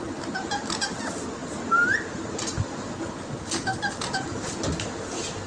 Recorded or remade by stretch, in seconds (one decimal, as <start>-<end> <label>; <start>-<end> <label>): 0.0-5.5 recorded